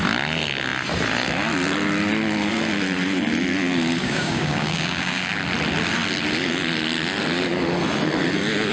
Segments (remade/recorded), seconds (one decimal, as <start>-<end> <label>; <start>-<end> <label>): 0.0-4.0 recorded; 4.0-5.3 remade; 5.3-8.7 recorded